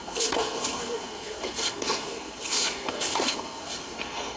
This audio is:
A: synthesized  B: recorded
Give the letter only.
A